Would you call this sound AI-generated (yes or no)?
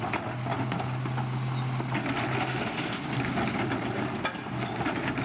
no